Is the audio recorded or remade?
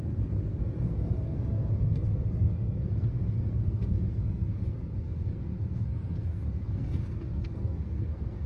remade